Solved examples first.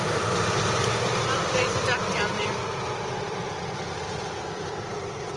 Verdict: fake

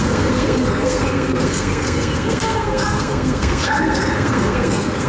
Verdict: fake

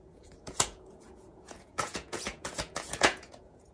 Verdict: fake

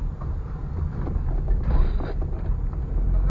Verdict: fake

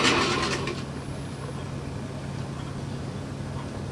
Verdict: real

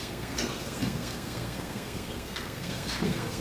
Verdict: fake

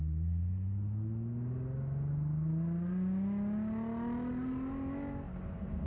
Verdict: real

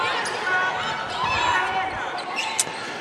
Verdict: real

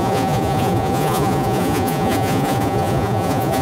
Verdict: fake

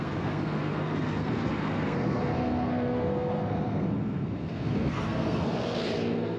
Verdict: fake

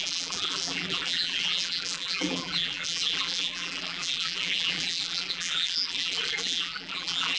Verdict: fake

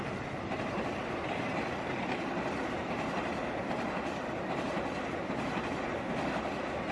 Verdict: real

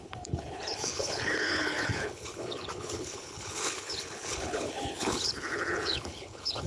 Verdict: fake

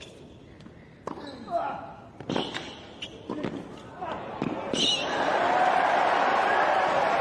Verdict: real